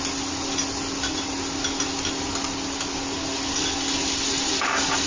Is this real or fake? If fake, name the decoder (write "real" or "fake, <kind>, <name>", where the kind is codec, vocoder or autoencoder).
real